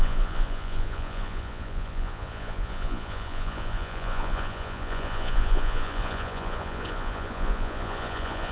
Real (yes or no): no